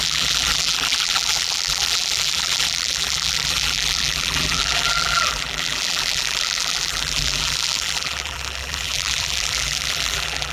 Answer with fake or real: fake